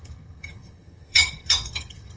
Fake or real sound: fake